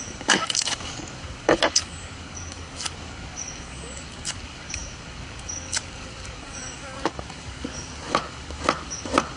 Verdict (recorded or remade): remade